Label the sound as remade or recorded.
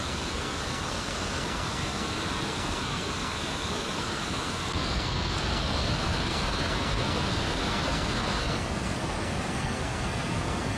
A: remade